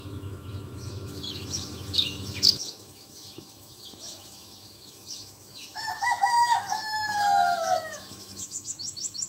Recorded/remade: remade